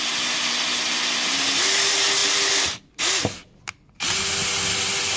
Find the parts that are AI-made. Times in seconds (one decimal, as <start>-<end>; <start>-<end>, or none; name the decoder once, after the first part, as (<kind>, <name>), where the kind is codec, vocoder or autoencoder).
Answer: none